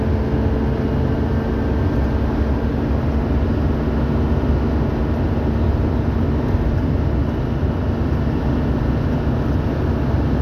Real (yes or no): yes